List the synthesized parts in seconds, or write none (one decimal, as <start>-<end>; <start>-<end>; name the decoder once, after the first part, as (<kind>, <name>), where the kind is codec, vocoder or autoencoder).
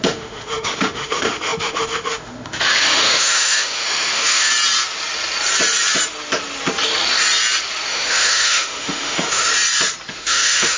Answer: 0.0-4.5 (autoencoder, DAC-VAE); 7.9-9.5; 10.1-10.8